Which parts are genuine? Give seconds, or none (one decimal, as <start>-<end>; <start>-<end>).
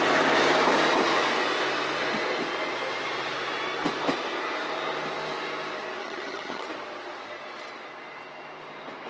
0.0-6.0; 6.7-9.1